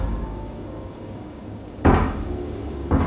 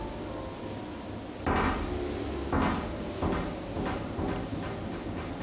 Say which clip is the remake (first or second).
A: first